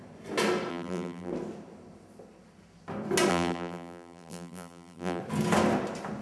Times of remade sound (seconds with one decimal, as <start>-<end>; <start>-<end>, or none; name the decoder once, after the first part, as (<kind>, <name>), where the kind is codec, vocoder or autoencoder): 0.7-1.3 (vocoder, BigVGAN v2); 3.3-5.2